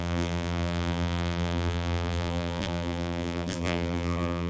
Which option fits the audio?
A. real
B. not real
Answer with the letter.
B